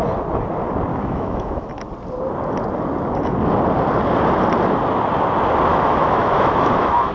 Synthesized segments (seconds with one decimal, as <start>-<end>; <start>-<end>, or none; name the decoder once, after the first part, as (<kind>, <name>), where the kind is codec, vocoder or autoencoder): 0.9-1.7 (autoencoder, DAC-VAE); 5.7-7.1